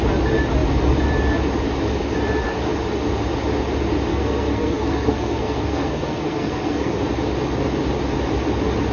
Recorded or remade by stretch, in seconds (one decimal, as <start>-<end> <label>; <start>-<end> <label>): 0.0-4.1 recorded; 4.1-7.0 remade; 7.0-8.9 recorded